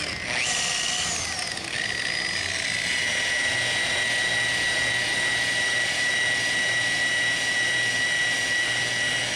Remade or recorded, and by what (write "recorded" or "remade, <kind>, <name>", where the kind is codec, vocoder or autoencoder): recorded